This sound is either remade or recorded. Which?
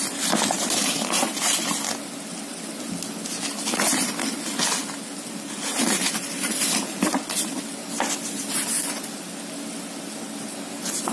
recorded